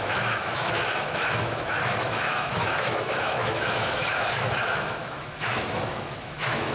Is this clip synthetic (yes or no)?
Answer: yes